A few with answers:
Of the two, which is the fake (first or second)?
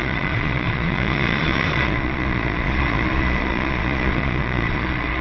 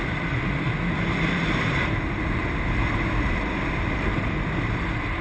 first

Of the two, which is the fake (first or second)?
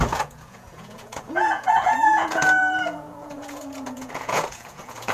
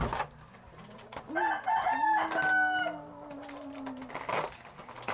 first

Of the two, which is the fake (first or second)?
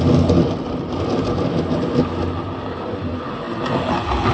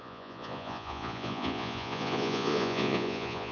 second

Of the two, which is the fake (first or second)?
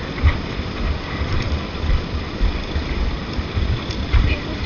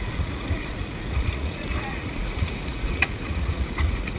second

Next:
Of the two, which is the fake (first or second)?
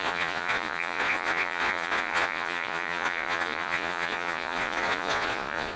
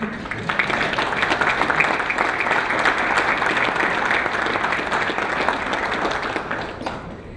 first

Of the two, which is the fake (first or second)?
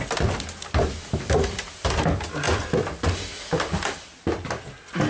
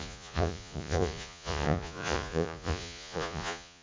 second